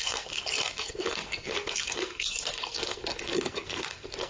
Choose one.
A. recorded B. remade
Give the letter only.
B